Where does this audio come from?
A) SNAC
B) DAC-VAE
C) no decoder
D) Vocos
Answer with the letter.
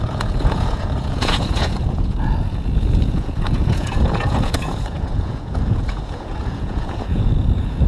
D